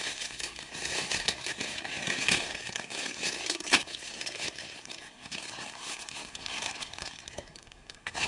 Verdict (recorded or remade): remade